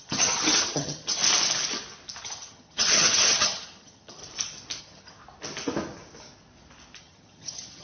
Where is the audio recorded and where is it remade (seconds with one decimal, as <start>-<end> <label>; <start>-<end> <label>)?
0.0-1.2 remade; 1.2-2.2 recorded; 2.2-4.2 remade; 4.2-4.8 recorded; 4.8-5.2 remade; 5.2-7.0 recorded; 7.0-7.8 remade